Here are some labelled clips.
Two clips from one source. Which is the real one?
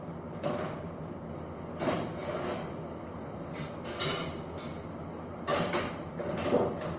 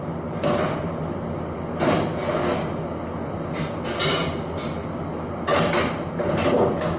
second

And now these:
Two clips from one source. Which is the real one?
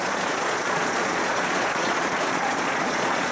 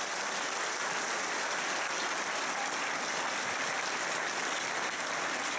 second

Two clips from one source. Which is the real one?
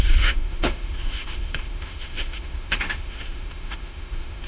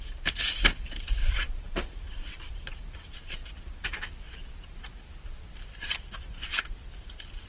second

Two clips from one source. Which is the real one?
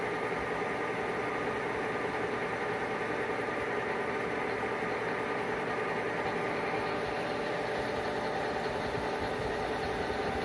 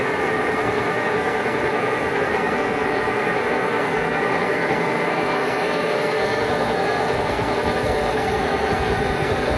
first